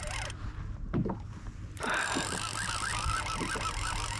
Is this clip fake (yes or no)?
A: no